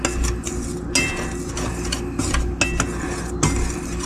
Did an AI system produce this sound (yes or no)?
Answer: no